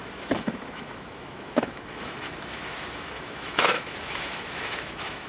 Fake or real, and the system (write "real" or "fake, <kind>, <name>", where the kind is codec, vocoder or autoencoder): fake, autoencoder, DAC-VAE